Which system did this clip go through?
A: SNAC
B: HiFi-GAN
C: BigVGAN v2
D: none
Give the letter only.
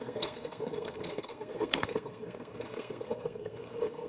A